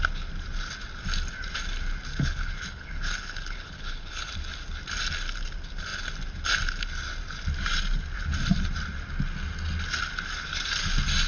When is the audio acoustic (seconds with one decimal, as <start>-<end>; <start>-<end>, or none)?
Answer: 0.0-2.1; 4.3-11.3